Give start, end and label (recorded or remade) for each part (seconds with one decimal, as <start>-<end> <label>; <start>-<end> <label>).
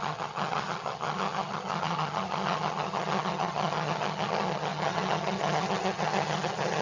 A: 0.0-6.8 remade